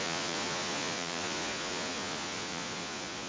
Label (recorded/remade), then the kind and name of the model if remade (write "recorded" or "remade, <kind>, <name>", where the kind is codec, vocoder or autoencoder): remade, vocoder, Vocos